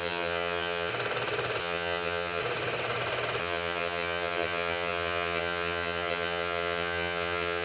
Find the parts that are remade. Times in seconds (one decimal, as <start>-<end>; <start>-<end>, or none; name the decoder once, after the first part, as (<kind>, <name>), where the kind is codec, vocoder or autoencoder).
0.0-0.9 (vocoder, HiFi-GAN); 1.6-2.4; 3.4-7.6